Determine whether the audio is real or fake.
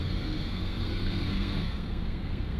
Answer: fake